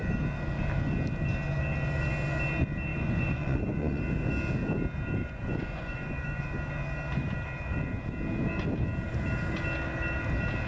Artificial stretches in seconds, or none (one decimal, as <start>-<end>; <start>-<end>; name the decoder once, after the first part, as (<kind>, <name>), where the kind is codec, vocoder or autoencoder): 2.9-4.0 (vocoder, Vocos); 5.2-6.4